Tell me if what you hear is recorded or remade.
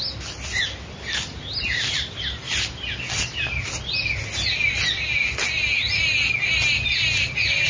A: recorded